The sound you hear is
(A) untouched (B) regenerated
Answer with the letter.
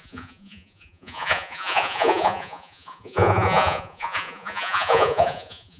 B